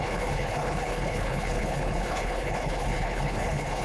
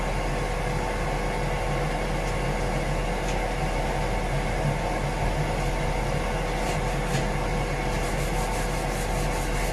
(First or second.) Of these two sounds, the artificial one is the first